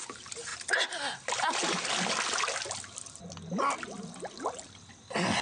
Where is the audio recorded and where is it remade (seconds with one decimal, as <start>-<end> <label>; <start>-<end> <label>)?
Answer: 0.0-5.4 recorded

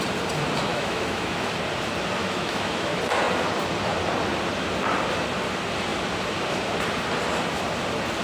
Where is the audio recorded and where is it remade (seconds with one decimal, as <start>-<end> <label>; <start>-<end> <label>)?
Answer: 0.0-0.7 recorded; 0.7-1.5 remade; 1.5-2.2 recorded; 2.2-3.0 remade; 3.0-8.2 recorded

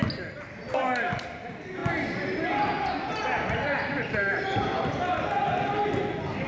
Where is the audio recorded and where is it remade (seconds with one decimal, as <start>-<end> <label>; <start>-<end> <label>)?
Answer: 0.0-6.5 recorded

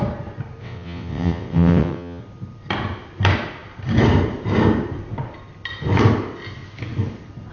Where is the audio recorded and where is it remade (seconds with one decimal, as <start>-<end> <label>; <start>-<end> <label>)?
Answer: 0.0-0.6 recorded; 0.6-2.2 remade; 2.2-7.5 recorded

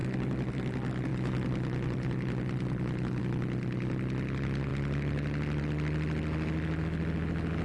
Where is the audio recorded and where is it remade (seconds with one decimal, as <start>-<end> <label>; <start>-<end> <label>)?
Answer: 0.0-7.6 recorded

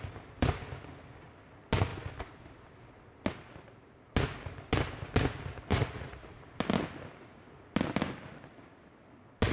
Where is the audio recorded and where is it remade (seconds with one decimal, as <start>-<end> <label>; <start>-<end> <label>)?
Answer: 0.0-5.7 recorded; 5.7-6.4 remade; 6.4-9.5 recorded

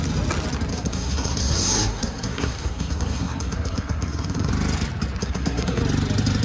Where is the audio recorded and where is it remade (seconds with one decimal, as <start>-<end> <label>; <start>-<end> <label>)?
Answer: 0.0-0.7 recorded; 0.7-4.5 remade; 4.5-5.2 recorded; 5.2-5.8 remade; 5.8-6.4 recorded